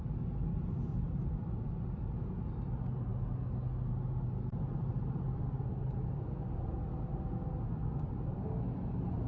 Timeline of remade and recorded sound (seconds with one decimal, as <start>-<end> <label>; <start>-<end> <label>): 0.0-0.9 recorded; 0.9-2.0 remade; 2.0-9.3 recorded